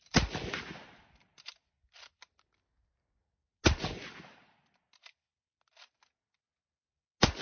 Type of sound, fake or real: real